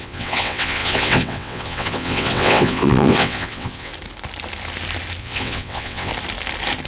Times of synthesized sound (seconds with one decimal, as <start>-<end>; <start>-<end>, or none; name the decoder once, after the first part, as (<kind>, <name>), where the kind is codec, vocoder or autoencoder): 0.0-3.9 (vocoder, WaveNeXt); 5.2-6.1